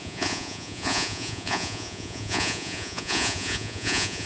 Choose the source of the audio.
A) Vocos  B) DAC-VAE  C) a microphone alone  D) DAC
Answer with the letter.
A